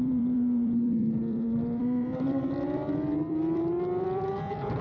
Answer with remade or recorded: remade